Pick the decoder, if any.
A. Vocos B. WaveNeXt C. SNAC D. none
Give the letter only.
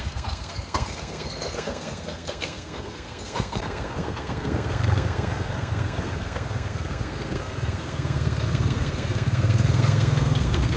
C